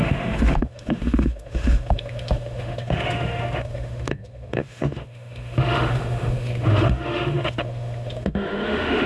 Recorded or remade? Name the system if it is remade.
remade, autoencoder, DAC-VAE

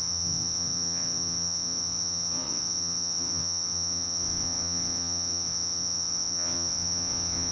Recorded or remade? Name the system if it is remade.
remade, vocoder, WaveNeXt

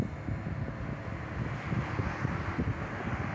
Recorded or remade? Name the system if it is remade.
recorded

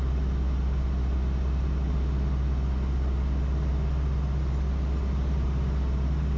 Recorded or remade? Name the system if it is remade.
recorded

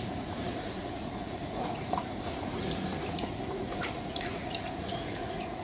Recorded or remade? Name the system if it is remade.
remade, vocoder, Vocos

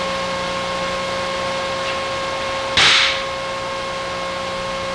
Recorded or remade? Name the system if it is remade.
recorded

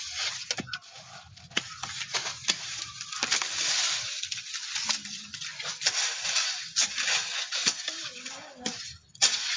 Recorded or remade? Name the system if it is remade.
recorded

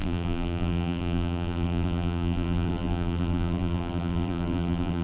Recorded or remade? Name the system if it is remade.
remade, vocoder, BigVGAN v2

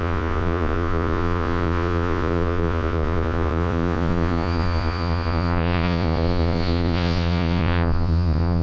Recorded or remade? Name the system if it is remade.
remade, vocoder, Vocos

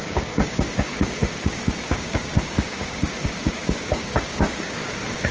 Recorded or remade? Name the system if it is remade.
remade, codec, DAC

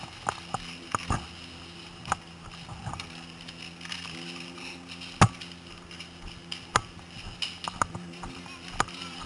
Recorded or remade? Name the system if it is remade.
recorded